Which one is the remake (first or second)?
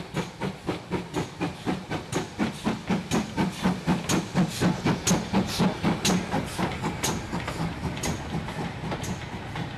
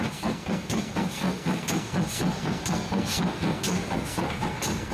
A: second